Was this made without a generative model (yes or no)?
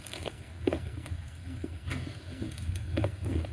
no